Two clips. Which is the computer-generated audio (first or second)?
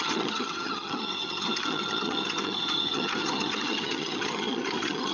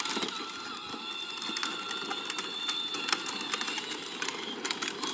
first